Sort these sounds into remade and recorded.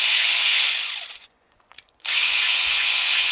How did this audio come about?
remade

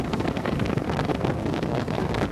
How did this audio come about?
remade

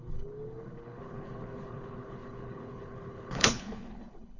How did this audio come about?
remade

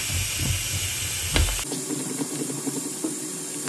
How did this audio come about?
recorded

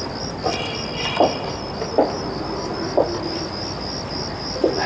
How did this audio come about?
recorded